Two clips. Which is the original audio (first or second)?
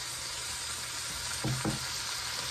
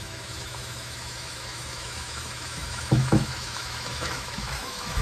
first